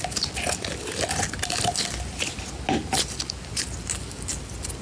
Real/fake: real